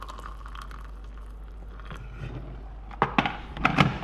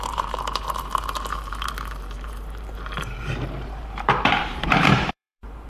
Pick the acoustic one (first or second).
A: first